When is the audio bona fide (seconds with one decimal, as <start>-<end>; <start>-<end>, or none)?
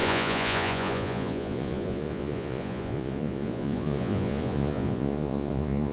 none